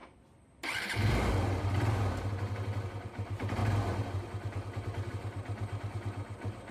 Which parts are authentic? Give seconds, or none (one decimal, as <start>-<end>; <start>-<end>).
0.0-6.7